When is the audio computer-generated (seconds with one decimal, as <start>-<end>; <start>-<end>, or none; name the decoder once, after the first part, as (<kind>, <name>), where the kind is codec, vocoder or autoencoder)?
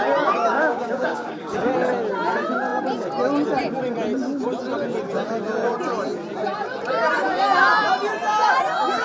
0.5-1.7 (codec, DAC)